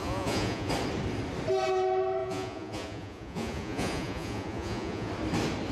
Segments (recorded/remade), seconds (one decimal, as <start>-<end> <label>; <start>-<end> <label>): 0.0-0.7 remade; 0.7-2.2 recorded; 2.2-5.1 remade; 5.1-5.7 recorded